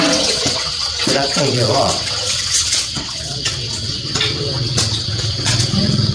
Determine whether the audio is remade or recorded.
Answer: remade